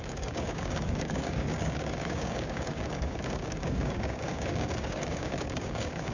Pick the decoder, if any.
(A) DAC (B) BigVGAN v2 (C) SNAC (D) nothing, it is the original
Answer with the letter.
A